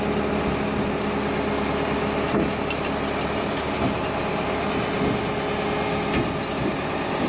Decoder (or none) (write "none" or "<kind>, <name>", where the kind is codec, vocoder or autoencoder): none